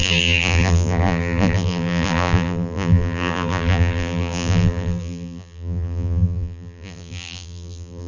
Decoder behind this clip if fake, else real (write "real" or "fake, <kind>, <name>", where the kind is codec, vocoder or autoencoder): fake, vocoder, BigVGAN v2